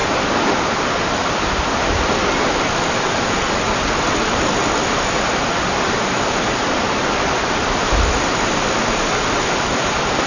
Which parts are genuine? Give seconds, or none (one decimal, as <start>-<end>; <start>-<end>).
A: 0.0-10.3